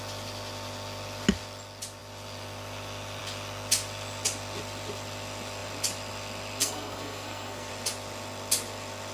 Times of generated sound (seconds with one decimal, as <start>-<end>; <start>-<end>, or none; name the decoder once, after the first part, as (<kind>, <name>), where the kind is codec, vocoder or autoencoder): 6.6-7.7 (codec, SNAC)